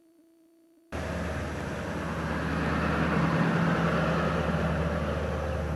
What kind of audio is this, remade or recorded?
recorded